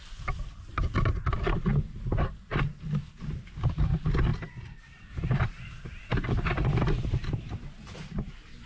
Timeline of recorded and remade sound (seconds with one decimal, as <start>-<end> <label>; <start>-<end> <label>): 0.0-8.7 recorded